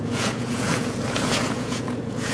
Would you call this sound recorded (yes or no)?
no